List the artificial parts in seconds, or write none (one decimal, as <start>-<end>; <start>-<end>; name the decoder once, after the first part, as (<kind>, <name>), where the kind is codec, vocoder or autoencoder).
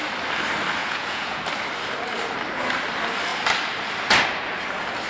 0.8-1.4 (vocoder, Vocos)